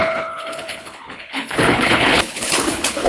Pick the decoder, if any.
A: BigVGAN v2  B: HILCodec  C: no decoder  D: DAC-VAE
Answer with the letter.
B